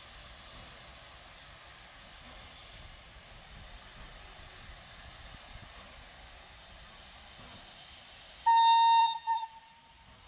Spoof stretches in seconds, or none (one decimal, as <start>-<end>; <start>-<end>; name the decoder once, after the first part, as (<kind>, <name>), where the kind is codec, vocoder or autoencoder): 2.6-3.2 (vocoder, BigVGAN v2); 9.0-9.9